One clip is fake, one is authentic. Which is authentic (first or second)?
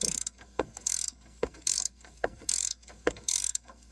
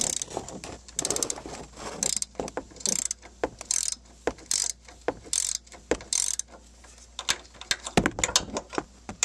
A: second